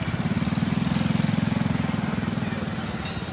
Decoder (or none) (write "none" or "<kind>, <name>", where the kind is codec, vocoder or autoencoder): none